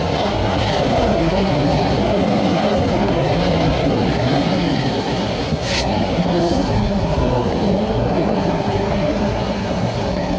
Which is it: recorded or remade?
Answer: remade